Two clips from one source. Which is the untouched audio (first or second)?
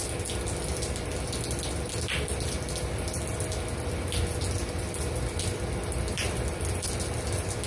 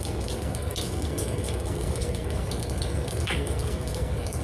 first